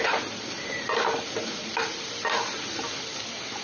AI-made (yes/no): yes